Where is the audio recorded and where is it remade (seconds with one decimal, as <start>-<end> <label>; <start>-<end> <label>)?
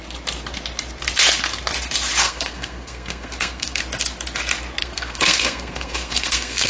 0.0-2.2 recorded; 2.2-3.8 remade; 3.8-4.8 recorded; 4.8-6.7 remade